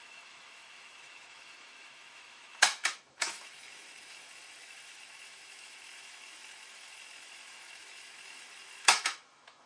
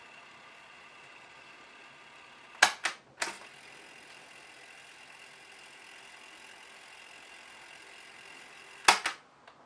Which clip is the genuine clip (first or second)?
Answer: second